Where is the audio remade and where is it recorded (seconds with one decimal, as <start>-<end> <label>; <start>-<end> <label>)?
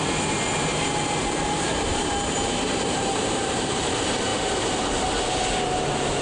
0.0-0.7 recorded; 0.7-3.6 remade; 3.6-6.2 recorded